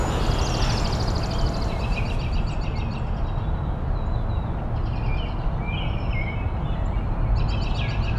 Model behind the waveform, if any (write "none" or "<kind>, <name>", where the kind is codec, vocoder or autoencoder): none